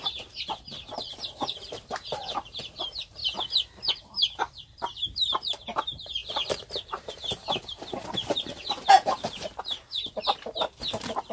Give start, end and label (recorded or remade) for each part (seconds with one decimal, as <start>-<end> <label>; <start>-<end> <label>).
0.0-3.2 remade; 3.2-3.9 recorded; 3.9-11.3 remade